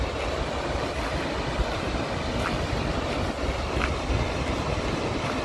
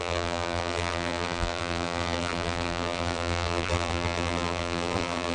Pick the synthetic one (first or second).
second